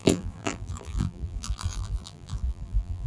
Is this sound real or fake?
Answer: fake